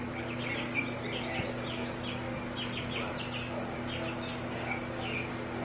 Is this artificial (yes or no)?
no